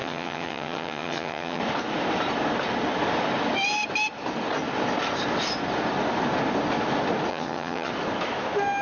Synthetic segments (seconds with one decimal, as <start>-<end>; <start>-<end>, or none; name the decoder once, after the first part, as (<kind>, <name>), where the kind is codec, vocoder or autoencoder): 0.0-1.6 (vocoder, HiFi-GAN); 7.3-7.9